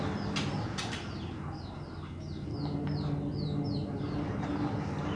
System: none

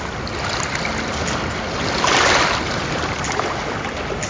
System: none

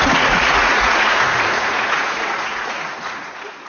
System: vocoder, Vocos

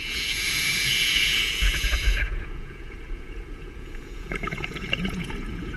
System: vocoder, Vocos